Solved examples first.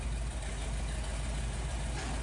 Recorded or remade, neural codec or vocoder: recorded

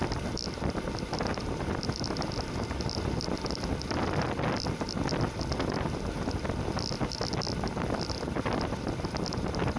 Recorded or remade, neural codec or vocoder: recorded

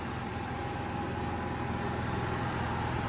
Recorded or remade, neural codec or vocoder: recorded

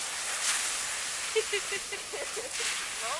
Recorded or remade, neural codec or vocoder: recorded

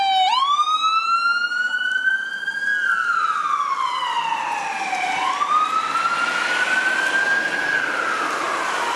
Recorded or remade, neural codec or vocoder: recorded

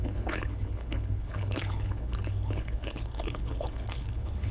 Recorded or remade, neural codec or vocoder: remade, codec, HILCodec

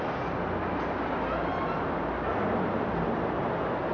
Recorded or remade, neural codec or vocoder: recorded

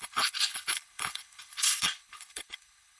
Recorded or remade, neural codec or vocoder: remade, codec, HILCodec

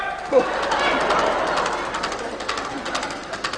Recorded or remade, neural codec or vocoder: recorded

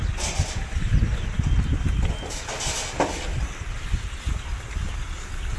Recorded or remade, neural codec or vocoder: recorded